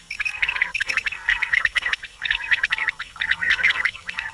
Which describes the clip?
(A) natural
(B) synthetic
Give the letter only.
B